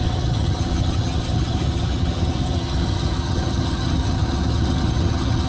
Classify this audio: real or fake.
fake